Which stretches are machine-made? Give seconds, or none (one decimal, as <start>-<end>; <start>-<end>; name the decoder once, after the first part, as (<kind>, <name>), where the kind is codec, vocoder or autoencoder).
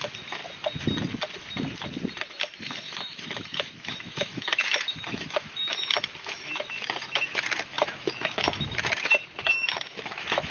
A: 0.0-0.4 (autoencoder, DAC-VAE); 2.6-10.5